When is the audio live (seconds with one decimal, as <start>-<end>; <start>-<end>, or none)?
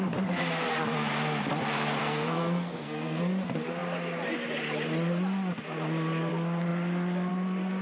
0.0-2.0; 3.2-7.8